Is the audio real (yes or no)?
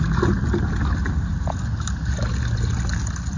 yes